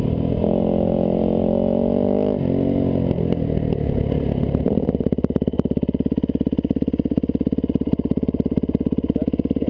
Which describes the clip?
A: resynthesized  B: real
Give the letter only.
B